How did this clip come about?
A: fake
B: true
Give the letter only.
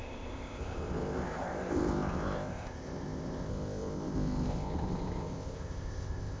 A